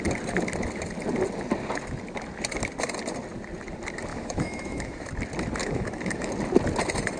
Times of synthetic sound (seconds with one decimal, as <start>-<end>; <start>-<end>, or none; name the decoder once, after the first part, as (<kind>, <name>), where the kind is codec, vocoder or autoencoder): 4.1-5.1 (autoencoder, DAC-VAE); 5.6-6.3